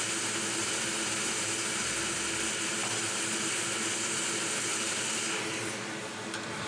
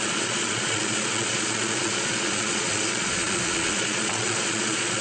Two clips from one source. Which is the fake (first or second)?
second